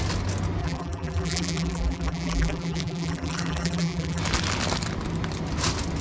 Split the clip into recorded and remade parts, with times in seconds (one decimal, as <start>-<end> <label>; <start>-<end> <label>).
0.0-0.6 recorded; 0.6-4.2 remade; 4.2-6.0 recorded